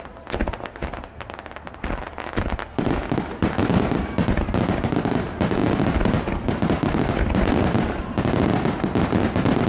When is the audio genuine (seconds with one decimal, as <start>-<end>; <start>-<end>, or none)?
0.0-9.7